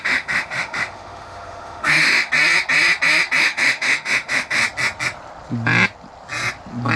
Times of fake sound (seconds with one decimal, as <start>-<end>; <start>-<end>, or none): 0.0-2.3; 3.4-4.6